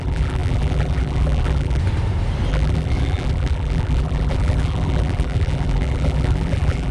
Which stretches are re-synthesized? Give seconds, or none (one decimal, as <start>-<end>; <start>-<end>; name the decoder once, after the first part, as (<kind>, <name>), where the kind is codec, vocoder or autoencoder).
0.0-1.8 (vocoder, BigVGAN v2); 2.5-6.9

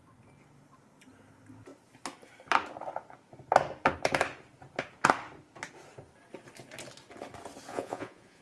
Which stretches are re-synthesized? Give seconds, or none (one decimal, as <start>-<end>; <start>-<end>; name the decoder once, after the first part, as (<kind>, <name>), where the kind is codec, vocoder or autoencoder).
7.7-8.4 (vocoder, Vocos)

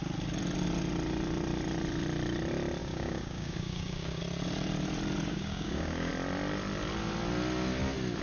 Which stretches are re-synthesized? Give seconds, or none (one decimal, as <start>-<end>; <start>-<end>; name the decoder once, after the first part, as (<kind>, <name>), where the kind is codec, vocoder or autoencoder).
2.8-4.2 (codec, DAC); 5.3-6.1

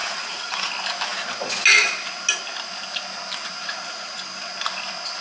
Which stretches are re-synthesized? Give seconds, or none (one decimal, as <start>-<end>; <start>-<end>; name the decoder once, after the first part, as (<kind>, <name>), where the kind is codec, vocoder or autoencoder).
0.0-0.7 (vocoder, Vocos); 3.4-4.2

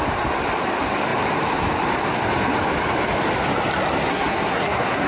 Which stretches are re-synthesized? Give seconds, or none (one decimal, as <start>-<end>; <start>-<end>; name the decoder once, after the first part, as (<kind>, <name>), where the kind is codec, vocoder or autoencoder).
4.1-5.1 (codec, SNAC)

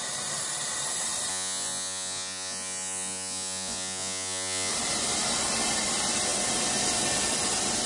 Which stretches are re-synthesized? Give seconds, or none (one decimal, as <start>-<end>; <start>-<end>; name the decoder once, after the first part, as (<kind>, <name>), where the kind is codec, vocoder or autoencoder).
1.3-4.7 (vocoder, Vocos)

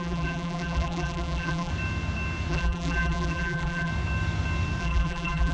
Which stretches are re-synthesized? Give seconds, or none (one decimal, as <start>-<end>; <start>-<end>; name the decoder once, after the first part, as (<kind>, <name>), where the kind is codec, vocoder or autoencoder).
0.0-1.7 (vocoder, BigVGAN v2); 2.5-3.9; 4.8-5.5